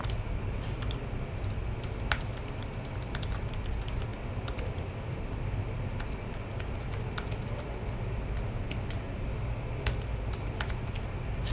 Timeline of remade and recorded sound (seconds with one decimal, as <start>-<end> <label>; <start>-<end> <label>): 0.0-11.5 recorded